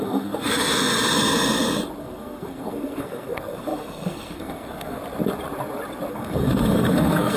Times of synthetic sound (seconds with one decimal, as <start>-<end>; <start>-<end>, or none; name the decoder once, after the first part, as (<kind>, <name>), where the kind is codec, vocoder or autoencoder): 0.0-0.7 (codec, SNAC); 2.0-5.0; 6.1-7.4